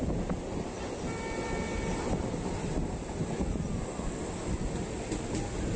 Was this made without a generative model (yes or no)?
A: yes